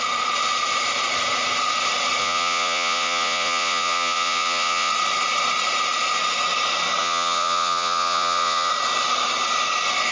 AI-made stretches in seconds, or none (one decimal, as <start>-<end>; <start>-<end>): 2.2-4.9; 7.0-8.7